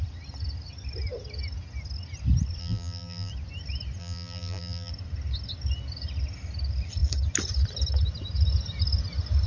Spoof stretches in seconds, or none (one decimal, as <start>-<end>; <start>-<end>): 2.6-3.3; 4.0-4.9